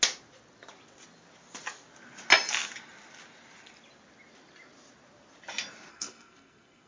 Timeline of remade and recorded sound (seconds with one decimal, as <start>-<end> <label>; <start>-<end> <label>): 0.0-5.9 recorded; 5.9-6.9 remade